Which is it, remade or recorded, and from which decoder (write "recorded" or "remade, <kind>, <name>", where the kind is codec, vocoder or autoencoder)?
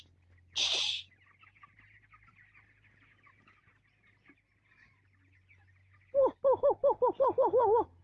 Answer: recorded